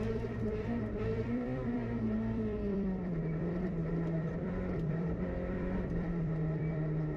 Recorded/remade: remade